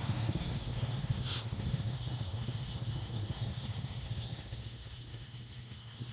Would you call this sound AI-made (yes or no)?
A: yes